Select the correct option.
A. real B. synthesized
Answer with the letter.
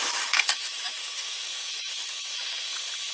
B